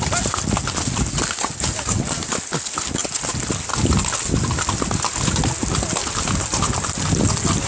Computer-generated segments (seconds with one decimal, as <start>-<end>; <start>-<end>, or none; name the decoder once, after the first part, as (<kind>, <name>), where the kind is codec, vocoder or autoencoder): none